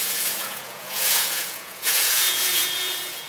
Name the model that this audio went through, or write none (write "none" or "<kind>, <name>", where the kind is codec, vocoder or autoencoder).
vocoder, Vocos